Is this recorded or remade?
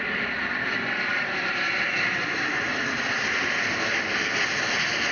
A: recorded